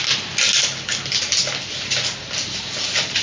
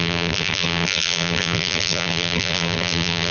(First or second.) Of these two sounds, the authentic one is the first